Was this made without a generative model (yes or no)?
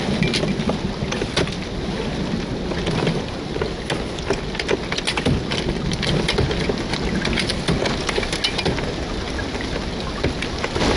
yes